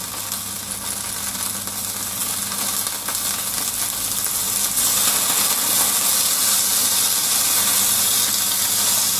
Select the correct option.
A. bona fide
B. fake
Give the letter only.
A